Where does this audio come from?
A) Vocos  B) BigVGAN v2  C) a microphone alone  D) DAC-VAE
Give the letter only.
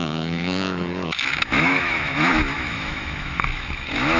D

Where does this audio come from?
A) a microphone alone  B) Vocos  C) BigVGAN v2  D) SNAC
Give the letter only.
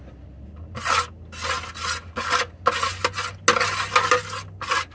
A